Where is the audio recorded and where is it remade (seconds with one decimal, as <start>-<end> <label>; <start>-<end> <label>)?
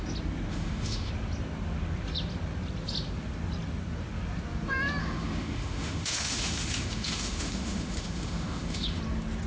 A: 0.0-0.5 recorded; 0.5-1.1 remade; 1.1-5.0 recorded; 5.0-9.0 remade; 9.0-9.5 recorded